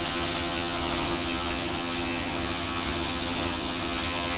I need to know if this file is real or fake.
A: fake